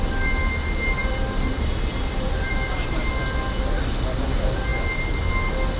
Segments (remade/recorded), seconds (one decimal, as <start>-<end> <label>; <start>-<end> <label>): 0.0-1.0 recorded; 1.0-3.1 remade; 3.1-5.8 recorded